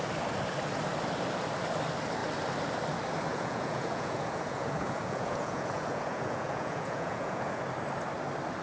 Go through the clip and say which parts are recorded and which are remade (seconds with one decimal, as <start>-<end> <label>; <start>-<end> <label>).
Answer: 0.0-3.3 recorded; 3.3-7.6 remade; 7.6-8.6 recorded